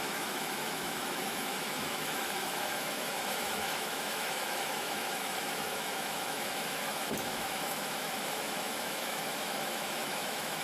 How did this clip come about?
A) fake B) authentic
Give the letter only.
A